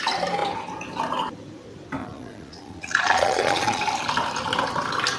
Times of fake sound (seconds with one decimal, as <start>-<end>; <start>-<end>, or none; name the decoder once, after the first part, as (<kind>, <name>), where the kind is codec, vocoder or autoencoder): 2.0-3.8 (vocoder, Vocos)